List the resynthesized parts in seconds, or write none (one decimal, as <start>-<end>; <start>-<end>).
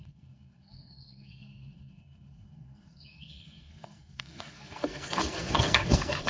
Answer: 0.0-6.3